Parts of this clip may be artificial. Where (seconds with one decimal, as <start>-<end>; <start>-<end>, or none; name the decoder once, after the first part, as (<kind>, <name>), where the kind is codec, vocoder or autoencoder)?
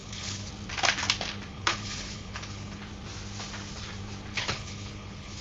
0.0-0.5 (codec, HILCodec); 1.5-2.8; 4.3-5.4